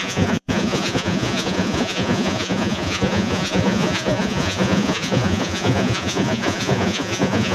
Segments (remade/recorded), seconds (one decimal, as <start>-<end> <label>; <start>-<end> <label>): 0.0-7.5 remade